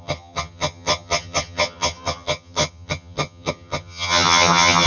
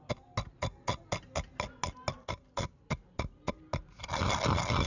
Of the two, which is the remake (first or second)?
first